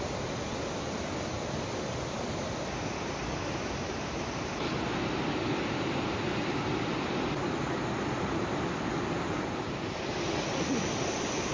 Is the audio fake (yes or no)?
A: yes